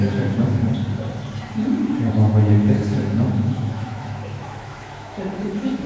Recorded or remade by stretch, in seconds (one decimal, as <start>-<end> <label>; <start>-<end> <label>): 0.0-0.6 remade; 0.6-2.1 recorded; 2.1-5.9 remade